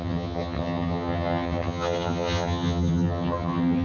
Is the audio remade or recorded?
remade